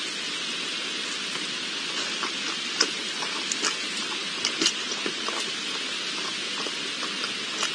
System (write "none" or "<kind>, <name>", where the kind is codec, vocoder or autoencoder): none